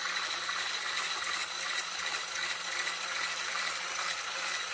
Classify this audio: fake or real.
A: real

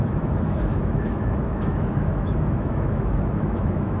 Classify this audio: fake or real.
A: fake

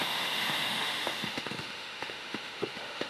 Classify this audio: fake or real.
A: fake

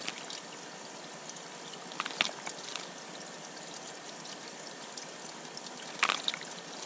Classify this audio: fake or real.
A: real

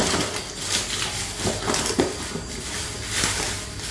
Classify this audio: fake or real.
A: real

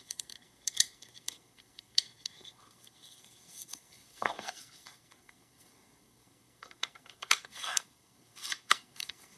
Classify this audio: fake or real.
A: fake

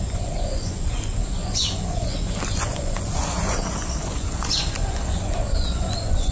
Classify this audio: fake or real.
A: fake